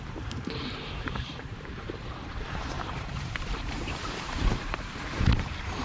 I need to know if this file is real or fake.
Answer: fake